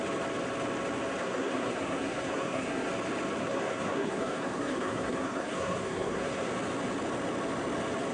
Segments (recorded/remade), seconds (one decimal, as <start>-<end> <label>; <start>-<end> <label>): 0.0-1.2 recorded; 1.2-2.9 remade; 2.9-3.4 recorded; 3.4-6.5 remade; 6.5-8.1 recorded